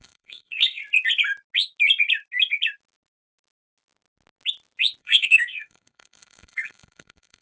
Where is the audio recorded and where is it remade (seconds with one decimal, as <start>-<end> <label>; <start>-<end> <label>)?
0.0-0.8 remade; 0.8-5.0 recorded; 5.0-7.4 remade